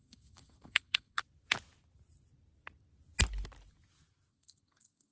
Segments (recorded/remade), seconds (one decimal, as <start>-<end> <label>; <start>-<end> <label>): 0.0-1.2 remade; 1.2-4.3 recorded; 4.3-5.1 remade